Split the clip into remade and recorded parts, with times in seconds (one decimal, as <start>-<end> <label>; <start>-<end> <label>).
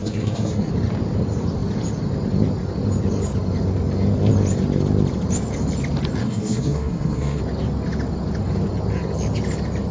0.0-0.7 remade; 0.7-6.2 recorded; 6.2-7.4 remade; 7.4-9.9 recorded